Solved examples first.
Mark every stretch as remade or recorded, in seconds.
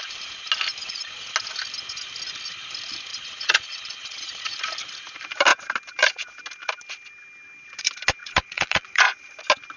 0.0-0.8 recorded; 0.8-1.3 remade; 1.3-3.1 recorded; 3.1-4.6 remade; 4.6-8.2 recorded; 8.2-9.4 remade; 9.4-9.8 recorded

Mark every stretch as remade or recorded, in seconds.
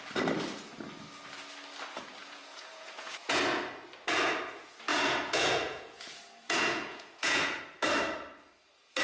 0.0-2.2 recorded; 2.2-3.4 remade; 3.4-4.9 recorded; 4.9-7.6 remade; 7.6-9.0 recorded